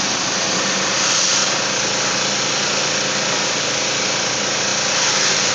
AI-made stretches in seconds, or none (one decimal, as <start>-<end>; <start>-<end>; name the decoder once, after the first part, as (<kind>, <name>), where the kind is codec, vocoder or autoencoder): 0.0-1.4 (vocoder, BigVGAN v2); 4.0-4.7